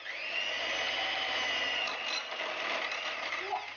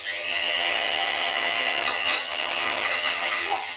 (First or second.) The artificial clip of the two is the second